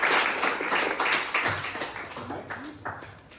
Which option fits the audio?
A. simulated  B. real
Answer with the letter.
B